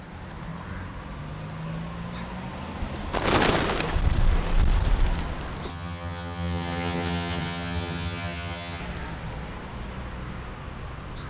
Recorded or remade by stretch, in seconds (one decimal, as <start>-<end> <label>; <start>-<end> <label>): 0.0-5.7 recorded; 5.7-8.8 remade; 8.8-11.3 recorded